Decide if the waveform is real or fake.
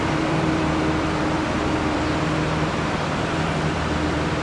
fake